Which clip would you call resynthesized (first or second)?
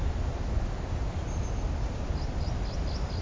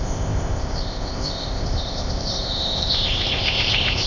second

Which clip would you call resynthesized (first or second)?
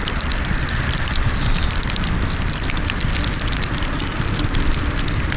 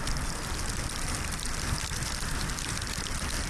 first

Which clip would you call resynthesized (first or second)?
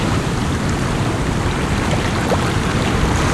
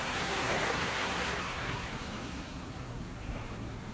second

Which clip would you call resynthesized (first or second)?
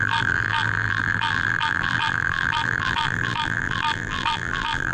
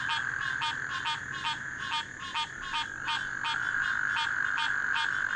first